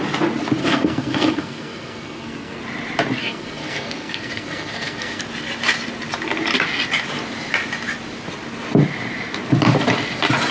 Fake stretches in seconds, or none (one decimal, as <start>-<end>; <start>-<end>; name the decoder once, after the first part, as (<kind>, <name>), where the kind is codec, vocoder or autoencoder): 0.6-2.6 (codec, SNAC); 3.2-5.2